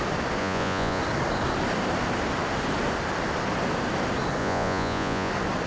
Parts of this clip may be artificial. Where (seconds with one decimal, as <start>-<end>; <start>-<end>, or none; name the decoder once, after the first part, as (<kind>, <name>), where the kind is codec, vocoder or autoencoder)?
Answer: 0.4-1.0 (vocoder, Vocos); 4.4-5.3